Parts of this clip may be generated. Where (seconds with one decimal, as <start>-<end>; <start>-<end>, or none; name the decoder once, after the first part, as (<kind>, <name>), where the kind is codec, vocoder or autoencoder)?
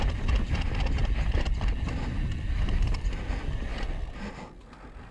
none